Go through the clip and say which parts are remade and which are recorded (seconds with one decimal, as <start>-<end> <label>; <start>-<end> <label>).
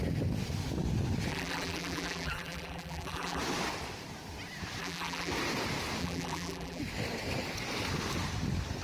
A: 0.0-1.3 recorded; 1.3-3.4 remade; 3.4-4.8 recorded; 4.8-5.3 remade; 5.3-6.0 recorded; 6.0-6.8 remade; 6.8-8.8 recorded